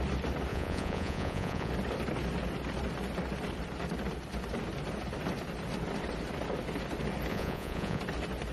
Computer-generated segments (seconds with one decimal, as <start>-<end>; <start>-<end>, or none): 0.5-1.7; 7.3-8.0